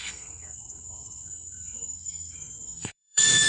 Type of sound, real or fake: fake